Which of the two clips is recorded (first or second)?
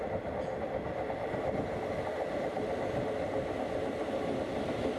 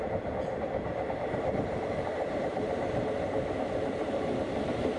first